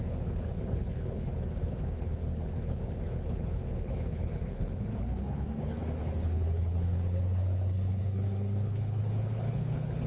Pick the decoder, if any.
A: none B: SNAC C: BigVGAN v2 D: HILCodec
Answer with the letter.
D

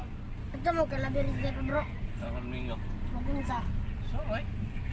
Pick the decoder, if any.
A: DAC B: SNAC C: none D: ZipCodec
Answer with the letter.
C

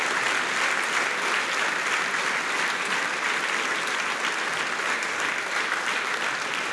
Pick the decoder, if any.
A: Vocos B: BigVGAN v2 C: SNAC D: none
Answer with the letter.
D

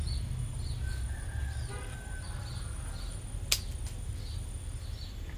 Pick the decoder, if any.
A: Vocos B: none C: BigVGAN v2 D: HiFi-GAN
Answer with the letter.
B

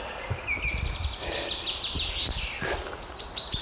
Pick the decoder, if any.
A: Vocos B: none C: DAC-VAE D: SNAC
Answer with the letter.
B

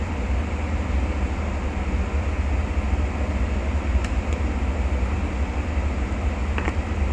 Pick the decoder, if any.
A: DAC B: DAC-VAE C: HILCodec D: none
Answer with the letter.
D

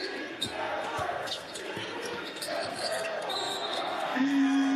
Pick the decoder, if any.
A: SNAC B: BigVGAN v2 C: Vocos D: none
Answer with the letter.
A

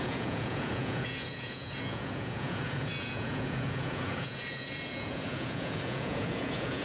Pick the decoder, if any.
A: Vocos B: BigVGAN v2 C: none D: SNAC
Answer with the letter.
A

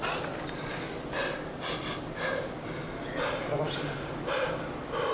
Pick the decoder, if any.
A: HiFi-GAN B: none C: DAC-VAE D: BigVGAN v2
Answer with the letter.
B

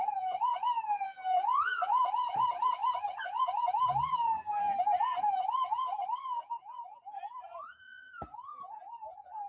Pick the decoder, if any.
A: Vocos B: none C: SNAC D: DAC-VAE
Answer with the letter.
A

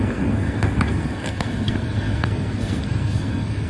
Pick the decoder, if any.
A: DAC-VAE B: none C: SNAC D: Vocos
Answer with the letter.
C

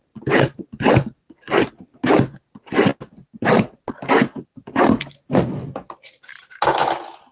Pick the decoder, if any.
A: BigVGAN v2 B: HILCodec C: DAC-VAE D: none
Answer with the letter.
D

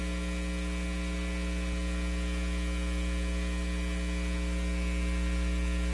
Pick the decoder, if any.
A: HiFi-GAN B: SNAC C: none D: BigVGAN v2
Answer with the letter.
C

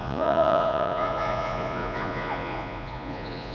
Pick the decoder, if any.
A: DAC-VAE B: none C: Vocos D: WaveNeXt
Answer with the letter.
C